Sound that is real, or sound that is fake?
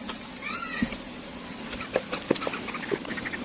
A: real